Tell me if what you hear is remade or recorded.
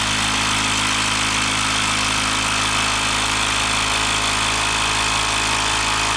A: recorded